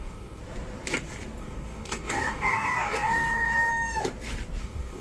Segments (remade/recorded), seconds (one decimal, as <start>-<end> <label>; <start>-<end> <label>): 0.0-0.4 remade; 0.4-1.4 recorded; 1.4-3.7 remade; 3.7-4.6 recorded; 4.6-5.0 remade